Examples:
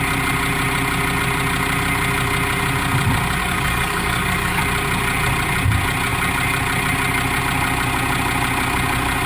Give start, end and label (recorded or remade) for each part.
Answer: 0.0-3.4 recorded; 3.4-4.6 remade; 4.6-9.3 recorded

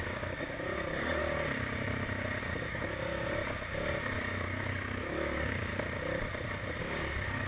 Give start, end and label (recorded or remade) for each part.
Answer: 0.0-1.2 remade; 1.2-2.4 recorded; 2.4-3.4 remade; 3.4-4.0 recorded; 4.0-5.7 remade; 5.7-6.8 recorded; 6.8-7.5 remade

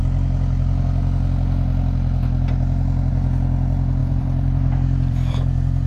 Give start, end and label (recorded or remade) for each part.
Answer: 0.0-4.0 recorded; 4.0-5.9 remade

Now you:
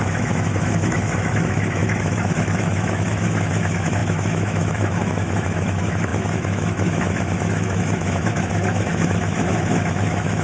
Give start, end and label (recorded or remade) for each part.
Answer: 0.0-10.4 remade